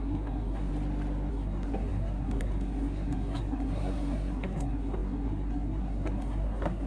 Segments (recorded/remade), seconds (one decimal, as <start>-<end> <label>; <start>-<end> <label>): 0.0-0.7 remade; 0.7-1.3 recorded; 1.3-6.9 remade